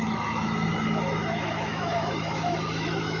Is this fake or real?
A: fake